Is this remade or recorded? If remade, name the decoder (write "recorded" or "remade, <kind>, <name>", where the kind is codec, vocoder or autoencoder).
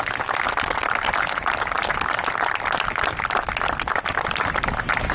recorded